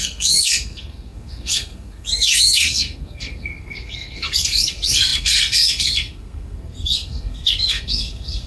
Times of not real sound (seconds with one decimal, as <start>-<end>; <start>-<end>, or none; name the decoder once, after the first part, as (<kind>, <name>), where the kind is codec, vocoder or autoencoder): 0.0-8.5 (codec, SNAC)